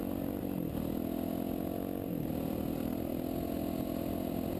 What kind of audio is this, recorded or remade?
recorded